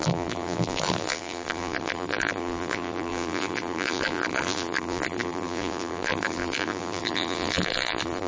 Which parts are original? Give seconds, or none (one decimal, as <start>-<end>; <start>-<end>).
none